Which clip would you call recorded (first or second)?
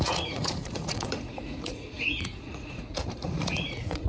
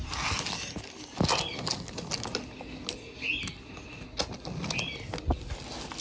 second